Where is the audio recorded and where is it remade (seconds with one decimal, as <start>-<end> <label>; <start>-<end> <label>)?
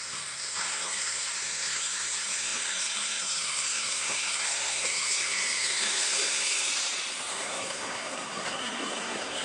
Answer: 0.0-6.7 remade; 6.7-7.3 recorded; 7.3-9.4 remade